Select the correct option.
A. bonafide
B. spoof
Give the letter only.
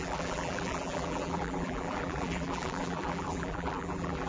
B